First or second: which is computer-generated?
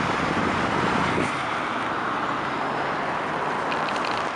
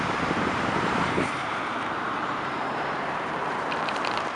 second